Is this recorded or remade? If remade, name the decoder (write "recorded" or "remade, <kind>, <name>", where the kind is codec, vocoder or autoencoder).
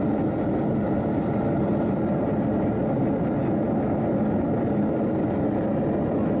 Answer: recorded